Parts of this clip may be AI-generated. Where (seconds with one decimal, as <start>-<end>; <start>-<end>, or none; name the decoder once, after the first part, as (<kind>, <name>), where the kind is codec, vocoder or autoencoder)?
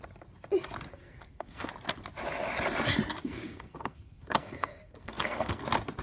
0.9-1.7 (codec, SNAC); 3.2-5.6